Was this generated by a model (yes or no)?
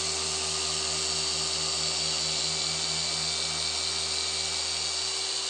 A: no